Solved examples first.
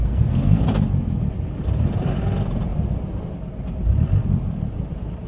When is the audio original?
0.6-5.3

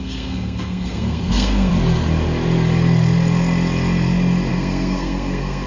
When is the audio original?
1.7-4.5

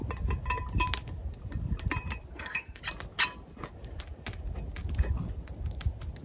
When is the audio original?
0.0-2.3; 2.8-6.2